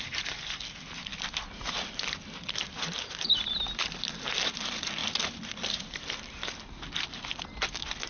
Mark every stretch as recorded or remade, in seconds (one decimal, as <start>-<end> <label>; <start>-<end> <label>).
0.0-8.1 recorded

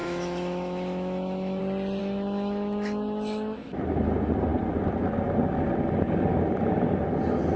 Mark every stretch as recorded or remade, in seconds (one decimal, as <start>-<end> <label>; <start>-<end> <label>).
0.0-1.6 remade; 1.6-2.0 recorded; 2.0-3.8 remade; 3.8-7.6 recorded

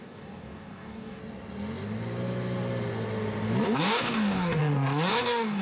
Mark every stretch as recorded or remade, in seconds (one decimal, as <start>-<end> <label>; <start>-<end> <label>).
0.0-1.2 remade; 1.2-3.8 recorded; 3.8-4.6 remade; 4.6-5.1 recorded; 5.1-5.6 remade

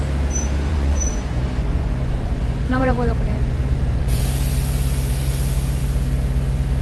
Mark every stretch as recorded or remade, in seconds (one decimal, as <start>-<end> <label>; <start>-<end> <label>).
0.0-0.7 recorded; 0.7-4.2 remade; 4.2-6.8 recorded

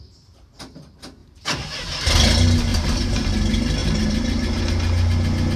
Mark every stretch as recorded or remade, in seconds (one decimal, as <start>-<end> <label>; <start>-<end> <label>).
0.0-1.2 recorded; 1.2-2.1 remade; 2.1-2.7 recorded; 2.7-3.3 remade; 3.3-3.8 recorded; 3.8-4.6 remade; 4.6-5.6 recorded

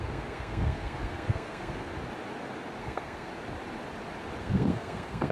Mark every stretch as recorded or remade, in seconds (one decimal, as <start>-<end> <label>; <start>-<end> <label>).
0.0-1.9 remade; 1.9-2.8 recorded; 2.8-3.3 remade; 3.3-4.4 recorded; 4.4-5.3 remade

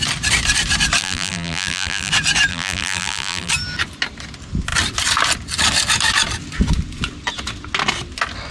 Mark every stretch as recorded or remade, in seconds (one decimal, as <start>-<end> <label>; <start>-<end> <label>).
0.0-1.0 recorded; 1.0-2.1 remade; 2.1-2.5 recorded; 2.5-3.5 remade; 3.5-8.5 recorded

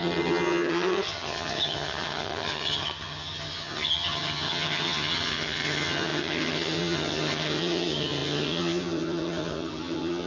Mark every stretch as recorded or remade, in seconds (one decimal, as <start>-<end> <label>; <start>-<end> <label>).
0.0-10.3 remade